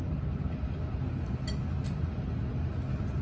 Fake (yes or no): no